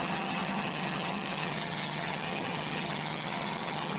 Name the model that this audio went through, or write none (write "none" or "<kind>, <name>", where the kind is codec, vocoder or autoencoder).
vocoder, HiFi-GAN